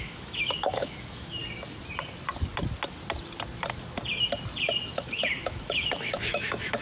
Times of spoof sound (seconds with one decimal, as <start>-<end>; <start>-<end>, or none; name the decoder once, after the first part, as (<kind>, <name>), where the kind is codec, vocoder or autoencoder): 0.0-1.4 (autoencoder, DAC-VAE); 5.0-6.8